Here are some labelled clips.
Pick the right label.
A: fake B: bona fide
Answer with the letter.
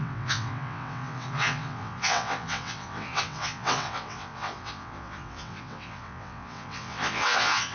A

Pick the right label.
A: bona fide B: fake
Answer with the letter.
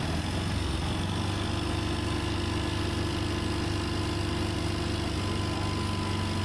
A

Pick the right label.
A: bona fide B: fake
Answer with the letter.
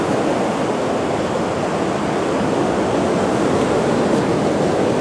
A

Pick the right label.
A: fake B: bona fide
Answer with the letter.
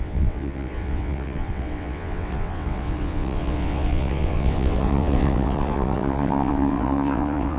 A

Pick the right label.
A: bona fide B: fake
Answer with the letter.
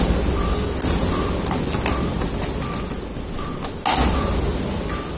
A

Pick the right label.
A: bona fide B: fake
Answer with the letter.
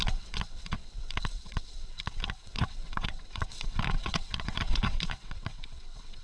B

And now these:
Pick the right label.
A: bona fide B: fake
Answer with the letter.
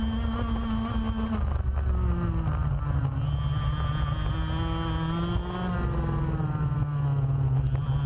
A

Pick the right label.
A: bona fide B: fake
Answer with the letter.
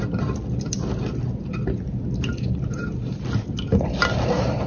A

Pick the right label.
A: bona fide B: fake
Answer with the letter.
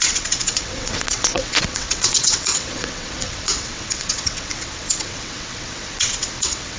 B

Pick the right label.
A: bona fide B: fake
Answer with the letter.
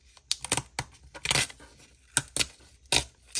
A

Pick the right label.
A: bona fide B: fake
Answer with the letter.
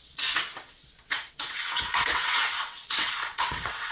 B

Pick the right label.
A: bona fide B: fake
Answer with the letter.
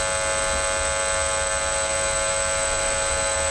A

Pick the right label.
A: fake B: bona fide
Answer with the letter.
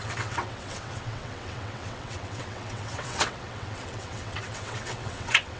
A